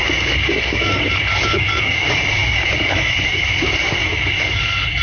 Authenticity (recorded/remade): remade